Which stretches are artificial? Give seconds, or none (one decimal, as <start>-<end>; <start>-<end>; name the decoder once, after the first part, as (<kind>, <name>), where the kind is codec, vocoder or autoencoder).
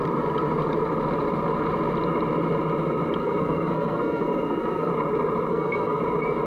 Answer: 3.2-4.9 (codec, SNAC); 5.5-6.0